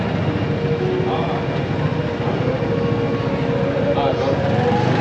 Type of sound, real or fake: real